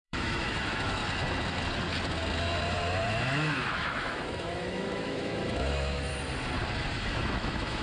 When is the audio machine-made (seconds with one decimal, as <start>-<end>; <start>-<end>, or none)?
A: 0.0-1.0; 3.1-6.1; 7.0-7.8